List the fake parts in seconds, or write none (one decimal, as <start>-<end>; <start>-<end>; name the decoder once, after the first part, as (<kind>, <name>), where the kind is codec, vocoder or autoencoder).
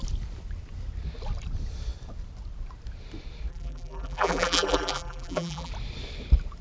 3.5-5.7 (vocoder, BigVGAN v2)